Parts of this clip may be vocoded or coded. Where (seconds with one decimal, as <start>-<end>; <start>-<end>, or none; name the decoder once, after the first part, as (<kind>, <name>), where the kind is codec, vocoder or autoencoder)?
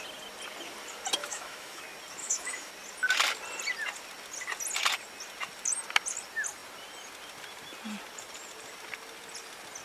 1.2-1.8 (autoencoder, DAC-VAE); 2.2-2.7